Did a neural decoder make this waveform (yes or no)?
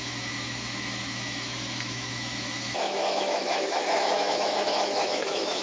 yes